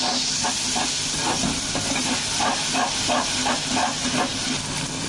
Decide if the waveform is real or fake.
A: real